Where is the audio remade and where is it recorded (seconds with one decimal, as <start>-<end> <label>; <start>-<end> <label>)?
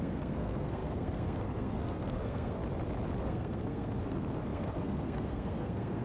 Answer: 0.0-2.6 remade; 2.6-3.2 recorded; 3.2-6.0 remade